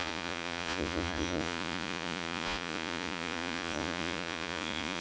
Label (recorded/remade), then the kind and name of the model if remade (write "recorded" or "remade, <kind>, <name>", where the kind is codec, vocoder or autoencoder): remade, vocoder, Vocos